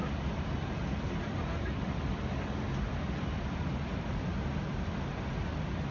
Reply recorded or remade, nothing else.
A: recorded